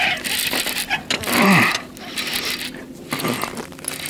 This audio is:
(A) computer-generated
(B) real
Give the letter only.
A